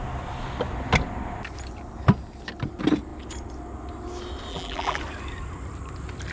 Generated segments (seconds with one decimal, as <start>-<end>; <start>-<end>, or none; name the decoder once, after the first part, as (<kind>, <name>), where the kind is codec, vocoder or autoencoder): 4.5-5.0 (vocoder, BigVGAN v2)